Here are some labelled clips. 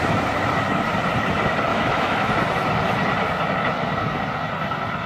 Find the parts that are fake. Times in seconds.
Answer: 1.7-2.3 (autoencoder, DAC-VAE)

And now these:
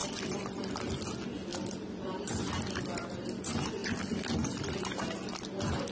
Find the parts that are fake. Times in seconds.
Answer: 0.0-0.7 (vocoder, BigVGAN v2); 1.5-2.5

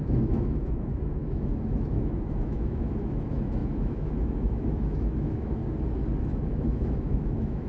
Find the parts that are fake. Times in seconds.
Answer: 0.0-5.6 (autoencoder, DAC-VAE); 6.2-7.7